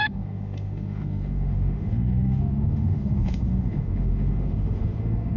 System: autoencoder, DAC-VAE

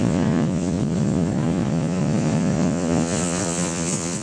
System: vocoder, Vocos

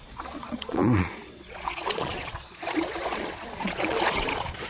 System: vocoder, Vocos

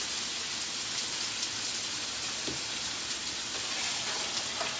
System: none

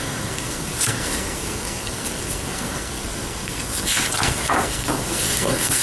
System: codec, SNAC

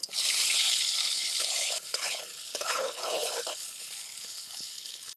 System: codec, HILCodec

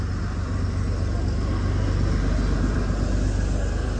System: none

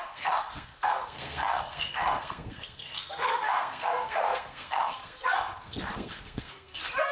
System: codec, SNAC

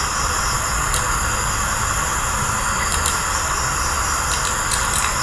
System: none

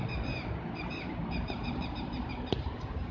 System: vocoder, BigVGAN v2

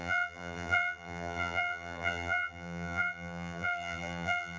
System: vocoder, BigVGAN v2